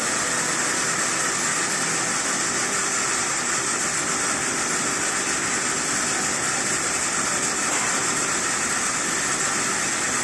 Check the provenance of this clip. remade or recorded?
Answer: recorded